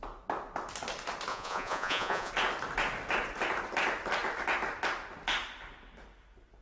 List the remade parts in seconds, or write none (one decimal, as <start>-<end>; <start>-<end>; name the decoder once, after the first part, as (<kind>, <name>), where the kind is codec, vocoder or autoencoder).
1.3-2.3 (vocoder, Vocos)